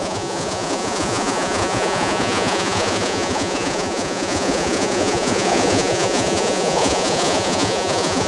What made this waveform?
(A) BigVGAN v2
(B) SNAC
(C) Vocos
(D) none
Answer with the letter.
C